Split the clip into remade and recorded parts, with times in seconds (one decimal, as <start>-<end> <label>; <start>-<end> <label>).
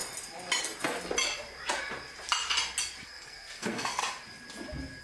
0.0-3.0 recorded; 3.0-4.0 remade; 4.0-5.0 recorded